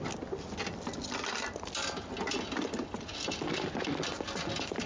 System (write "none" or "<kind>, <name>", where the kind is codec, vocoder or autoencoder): none